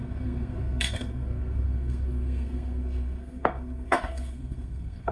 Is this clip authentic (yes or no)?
no